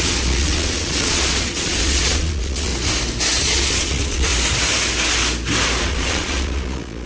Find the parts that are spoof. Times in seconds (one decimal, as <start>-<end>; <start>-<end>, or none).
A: 0.0-2.7; 3.4-4.3; 5.8-7.1